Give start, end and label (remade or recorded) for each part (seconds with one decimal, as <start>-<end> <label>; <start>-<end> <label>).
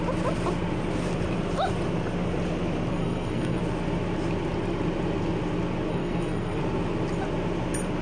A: 0.0-2.9 recorded; 2.9-3.6 remade; 3.6-5.9 recorded; 5.9-6.6 remade; 6.6-8.0 recorded